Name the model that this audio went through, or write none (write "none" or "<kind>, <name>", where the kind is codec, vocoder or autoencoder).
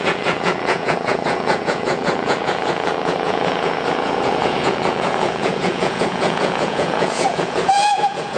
vocoder, Vocos